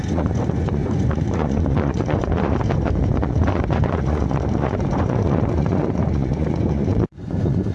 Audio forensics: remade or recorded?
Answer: remade